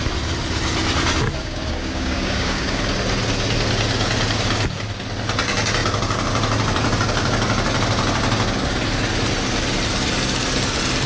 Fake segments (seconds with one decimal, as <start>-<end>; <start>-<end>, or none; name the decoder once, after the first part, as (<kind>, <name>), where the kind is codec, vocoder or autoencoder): 1.4-2.8 (codec, DAC)